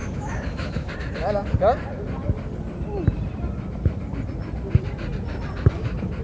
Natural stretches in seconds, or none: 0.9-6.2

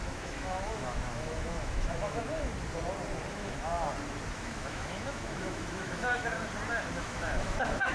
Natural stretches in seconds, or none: 2.5-3.3; 3.7-4.3; 6.3-7.0